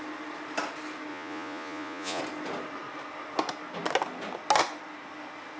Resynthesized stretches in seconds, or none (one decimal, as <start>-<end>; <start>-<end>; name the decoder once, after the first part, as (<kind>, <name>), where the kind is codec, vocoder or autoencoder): 1.1-2.2 (vocoder, Vocos)